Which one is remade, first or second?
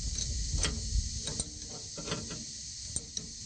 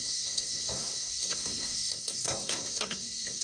second